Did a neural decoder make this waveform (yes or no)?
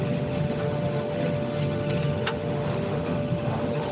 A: yes